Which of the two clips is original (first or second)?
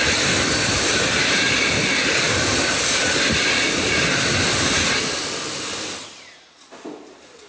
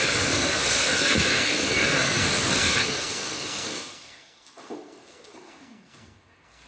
first